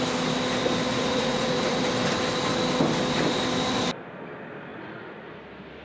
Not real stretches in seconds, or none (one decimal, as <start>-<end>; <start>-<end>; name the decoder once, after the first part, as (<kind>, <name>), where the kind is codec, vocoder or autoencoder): 0.9-1.8 (vocoder, Vocos); 4.7-5.3